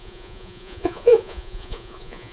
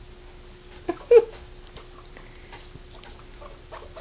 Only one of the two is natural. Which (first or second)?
second